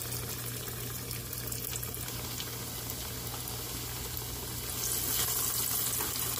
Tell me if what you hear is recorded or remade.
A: recorded